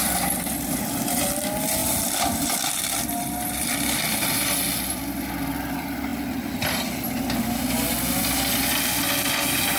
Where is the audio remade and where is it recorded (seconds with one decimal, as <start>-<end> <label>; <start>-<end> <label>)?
0.0-9.8 recorded